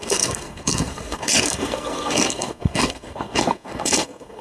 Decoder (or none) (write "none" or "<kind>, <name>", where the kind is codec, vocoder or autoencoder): codec, SNAC